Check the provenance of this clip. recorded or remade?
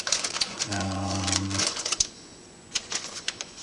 remade